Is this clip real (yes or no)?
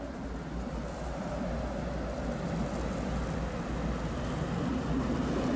yes